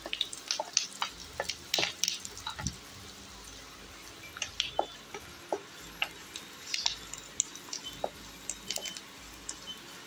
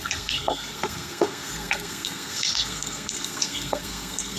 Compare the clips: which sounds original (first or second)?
first